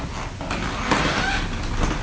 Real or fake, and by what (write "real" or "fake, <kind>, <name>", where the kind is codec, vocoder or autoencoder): real